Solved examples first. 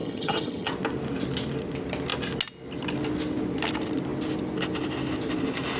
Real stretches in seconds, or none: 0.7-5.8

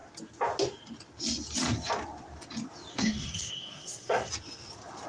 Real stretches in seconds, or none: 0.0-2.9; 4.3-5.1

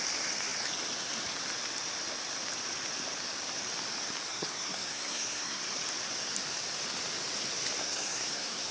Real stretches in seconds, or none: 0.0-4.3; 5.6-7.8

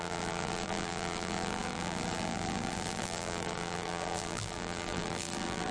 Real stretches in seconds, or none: none